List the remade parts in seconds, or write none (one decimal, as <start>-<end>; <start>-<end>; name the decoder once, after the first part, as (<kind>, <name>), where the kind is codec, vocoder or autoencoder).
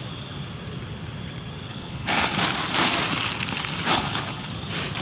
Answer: 1.7-2.4 (codec, HILCodec); 3.9-4.5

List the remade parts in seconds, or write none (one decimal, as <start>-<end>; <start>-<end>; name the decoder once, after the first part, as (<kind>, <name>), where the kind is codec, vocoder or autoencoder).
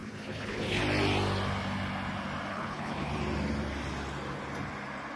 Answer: 0.0-0.8 (codec, HILCodec); 2.5-3.1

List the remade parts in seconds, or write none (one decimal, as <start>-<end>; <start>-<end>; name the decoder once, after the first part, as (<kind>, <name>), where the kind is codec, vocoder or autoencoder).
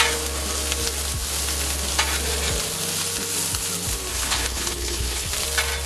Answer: 4.1-5.3 (codec, HILCodec)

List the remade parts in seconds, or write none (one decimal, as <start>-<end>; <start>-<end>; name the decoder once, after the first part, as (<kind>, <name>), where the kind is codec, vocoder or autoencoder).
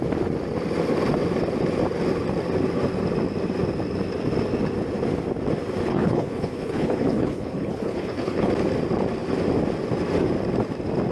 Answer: 5.9-8.5 (codec, HILCodec)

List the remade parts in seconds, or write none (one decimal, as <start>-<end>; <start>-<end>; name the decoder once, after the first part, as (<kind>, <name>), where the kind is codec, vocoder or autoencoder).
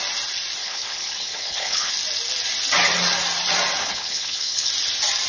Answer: 0.6-1.9 (codec, HILCodec); 3.8-4.7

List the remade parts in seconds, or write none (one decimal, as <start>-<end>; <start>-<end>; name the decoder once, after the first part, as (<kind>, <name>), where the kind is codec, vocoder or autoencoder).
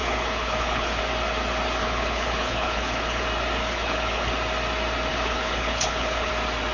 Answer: 0.0-1.0 (codec, HILCodec); 1.8-3.2; 3.6-4.3; 5.1-6.3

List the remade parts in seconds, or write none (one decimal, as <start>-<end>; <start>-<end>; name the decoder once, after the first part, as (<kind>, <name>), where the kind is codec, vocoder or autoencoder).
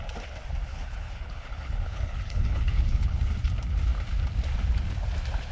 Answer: 0.7-3.3 (codec, HILCodec)